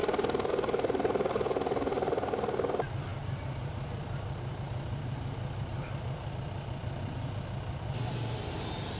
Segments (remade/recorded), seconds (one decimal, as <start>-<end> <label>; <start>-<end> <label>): 0.0-9.0 recorded